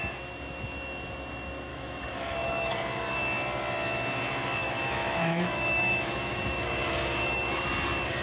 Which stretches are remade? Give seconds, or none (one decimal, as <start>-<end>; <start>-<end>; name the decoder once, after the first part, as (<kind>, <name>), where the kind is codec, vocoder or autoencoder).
1.7-2.7 (autoencoder, DAC-VAE); 4.6-7.7